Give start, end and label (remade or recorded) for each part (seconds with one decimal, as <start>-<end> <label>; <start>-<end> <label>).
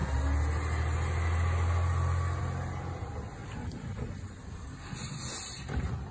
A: 0.0-3.4 recorded; 3.4-4.9 remade; 4.9-6.1 recorded